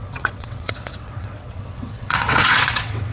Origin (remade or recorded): remade